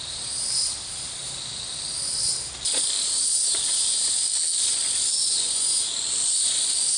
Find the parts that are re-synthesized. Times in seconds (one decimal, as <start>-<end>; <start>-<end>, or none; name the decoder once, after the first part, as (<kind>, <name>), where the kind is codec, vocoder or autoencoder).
5.2-5.8 (vocoder, Vocos)